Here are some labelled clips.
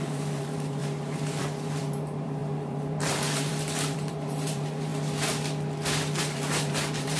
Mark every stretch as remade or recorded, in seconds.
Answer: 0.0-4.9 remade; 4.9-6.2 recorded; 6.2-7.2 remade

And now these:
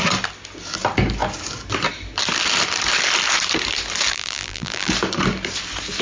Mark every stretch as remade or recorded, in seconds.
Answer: 0.0-4.1 recorded; 4.1-4.9 remade; 4.9-6.0 recorded